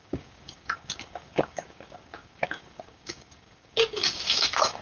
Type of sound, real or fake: fake